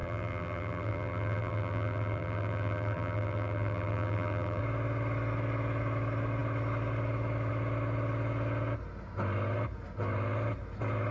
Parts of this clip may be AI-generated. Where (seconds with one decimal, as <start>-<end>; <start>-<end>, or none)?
0.0-4.6